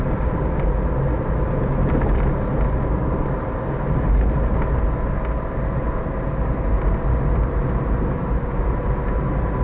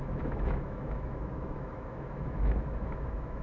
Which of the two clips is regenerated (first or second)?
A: second